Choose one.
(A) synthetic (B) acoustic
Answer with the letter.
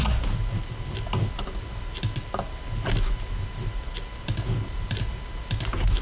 B